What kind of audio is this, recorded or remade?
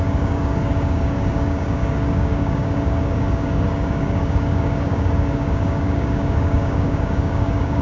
remade